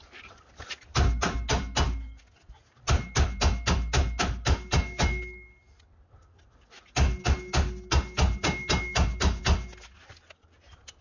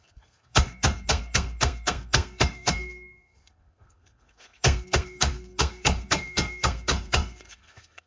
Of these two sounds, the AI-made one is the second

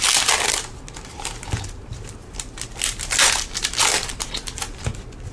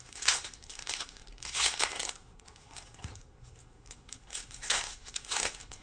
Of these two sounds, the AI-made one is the second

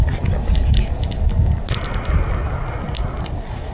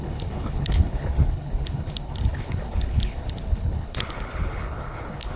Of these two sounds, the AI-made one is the second